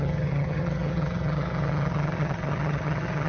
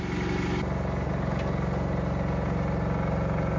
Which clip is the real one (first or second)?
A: second